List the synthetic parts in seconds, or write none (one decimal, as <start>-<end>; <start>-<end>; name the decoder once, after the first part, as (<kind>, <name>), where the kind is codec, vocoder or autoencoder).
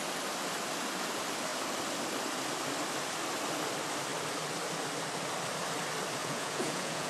6.2-7.1 (vocoder, Vocos)